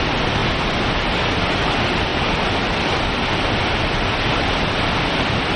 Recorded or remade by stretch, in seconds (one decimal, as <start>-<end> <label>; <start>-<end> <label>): 0.0-0.4 remade; 0.4-1.5 recorded; 1.5-2.1 remade; 2.1-5.6 recorded

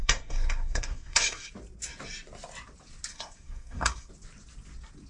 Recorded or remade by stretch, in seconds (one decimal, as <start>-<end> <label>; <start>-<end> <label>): 0.0-1.5 remade; 1.5-3.1 recorded; 3.1-4.1 remade; 4.1-5.1 recorded

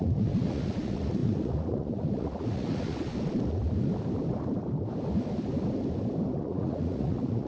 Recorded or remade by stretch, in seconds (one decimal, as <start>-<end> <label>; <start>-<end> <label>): 0.0-3.1 remade; 3.1-6.3 recorded; 6.3-7.5 remade

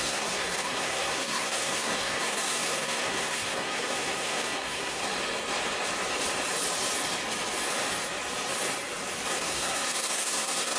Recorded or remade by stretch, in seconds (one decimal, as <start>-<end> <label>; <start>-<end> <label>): 0.0-5.0 remade; 5.0-9.3 recorded; 9.3-10.8 remade